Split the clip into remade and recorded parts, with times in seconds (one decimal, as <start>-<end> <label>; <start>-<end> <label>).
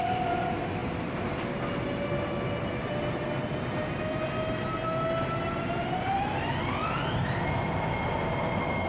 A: 0.0-8.9 recorded